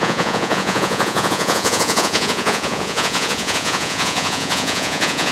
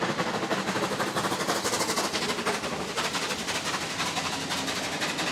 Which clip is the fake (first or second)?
first